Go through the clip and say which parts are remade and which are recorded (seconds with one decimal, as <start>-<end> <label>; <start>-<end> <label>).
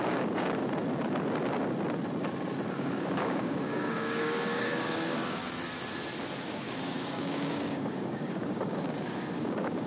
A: 0.0-0.6 remade; 0.6-2.7 recorded; 2.7-5.4 remade; 5.4-6.3 recorded; 6.3-9.9 remade